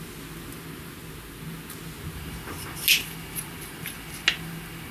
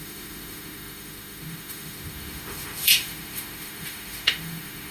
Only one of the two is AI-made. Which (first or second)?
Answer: second